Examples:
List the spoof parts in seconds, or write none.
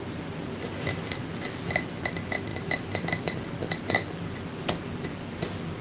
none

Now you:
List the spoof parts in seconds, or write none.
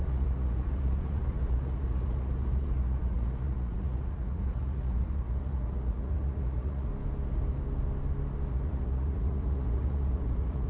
0.0-6.9 (vocoder, Vocos); 8.5-10.7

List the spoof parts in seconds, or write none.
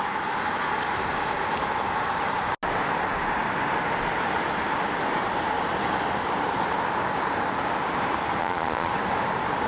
8.4-8.9 (vocoder, Vocos)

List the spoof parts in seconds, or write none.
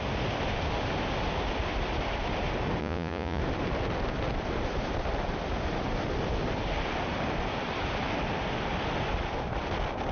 2.8-3.4 (vocoder, Vocos)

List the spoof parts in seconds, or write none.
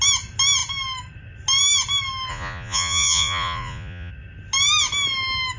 2.3-4.1 (vocoder, Vocos)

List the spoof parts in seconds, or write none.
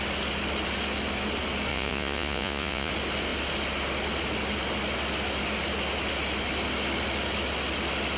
1.7-2.9 (vocoder, Vocos)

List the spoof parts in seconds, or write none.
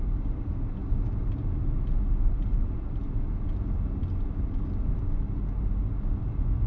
none